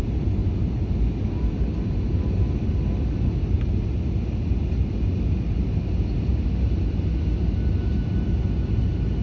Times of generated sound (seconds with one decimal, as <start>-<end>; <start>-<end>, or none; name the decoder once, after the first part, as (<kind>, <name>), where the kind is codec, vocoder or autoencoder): none